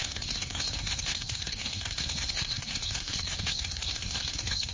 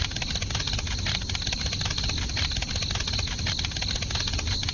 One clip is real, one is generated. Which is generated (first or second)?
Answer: first